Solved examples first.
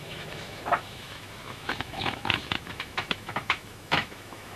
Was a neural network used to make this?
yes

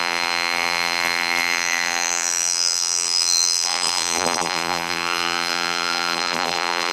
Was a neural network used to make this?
yes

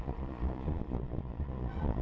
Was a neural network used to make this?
yes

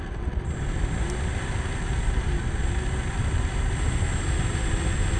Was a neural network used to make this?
no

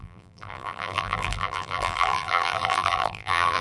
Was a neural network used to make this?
yes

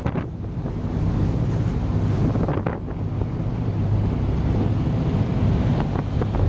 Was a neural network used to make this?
no